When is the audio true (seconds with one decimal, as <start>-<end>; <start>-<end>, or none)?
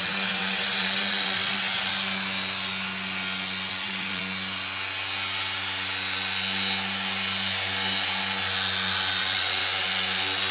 1.9-3.7; 4.2-9.2; 9.6-10.5